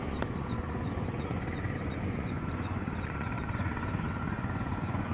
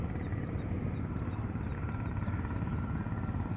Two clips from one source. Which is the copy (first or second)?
first